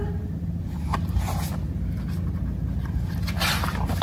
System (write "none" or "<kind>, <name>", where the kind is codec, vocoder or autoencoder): none